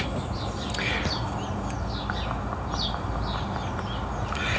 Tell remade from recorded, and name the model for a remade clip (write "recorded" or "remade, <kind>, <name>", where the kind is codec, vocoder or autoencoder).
recorded